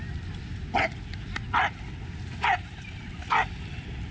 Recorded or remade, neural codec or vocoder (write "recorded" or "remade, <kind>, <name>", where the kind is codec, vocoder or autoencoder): recorded